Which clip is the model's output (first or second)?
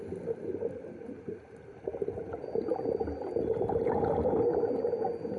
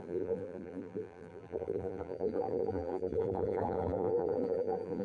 second